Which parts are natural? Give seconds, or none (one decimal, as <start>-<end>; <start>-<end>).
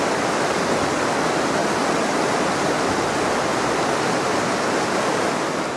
0.0-5.8